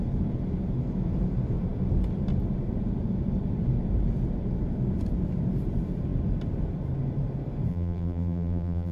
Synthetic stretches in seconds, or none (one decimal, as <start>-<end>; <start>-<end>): 7.7-8.9